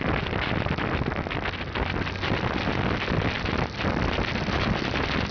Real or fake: real